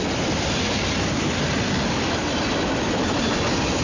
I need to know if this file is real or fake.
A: real